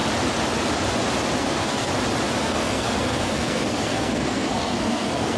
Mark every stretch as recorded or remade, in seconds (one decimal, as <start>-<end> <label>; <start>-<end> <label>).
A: 0.0-1.4 recorded; 1.4-1.9 remade; 1.9-2.4 recorded; 2.4-5.4 remade